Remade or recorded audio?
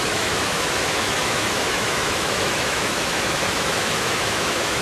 remade